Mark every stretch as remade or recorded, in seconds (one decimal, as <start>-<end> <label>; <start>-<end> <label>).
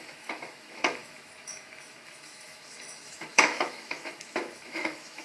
0.0-5.2 remade